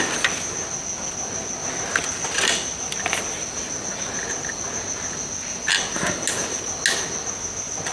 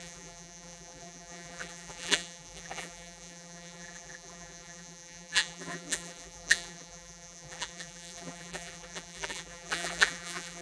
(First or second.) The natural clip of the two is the first